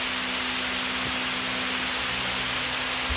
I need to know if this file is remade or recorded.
recorded